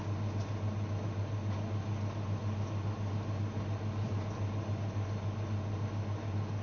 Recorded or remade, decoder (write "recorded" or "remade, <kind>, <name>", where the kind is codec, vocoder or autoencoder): recorded